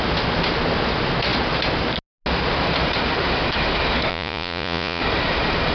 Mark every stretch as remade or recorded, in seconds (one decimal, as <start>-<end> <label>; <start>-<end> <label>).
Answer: 0.0-4.1 recorded; 4.1-5.0 remade; 5.0-5.7 recorded